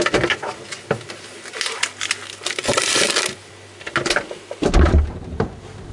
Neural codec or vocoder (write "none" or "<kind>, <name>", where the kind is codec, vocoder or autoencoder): none